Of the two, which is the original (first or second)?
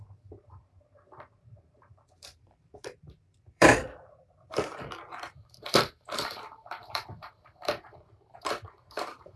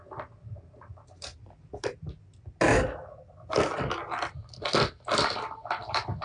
second